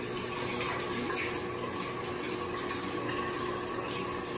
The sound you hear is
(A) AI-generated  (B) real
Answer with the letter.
B